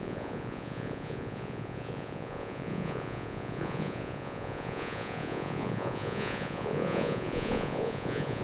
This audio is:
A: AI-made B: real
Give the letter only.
A